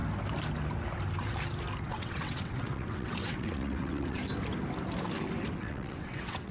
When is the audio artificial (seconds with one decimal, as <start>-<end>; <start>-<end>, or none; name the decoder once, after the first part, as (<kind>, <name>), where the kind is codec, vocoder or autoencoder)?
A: 1.9-4.2 (vocoder, WaveNeXt); 5.5-6.5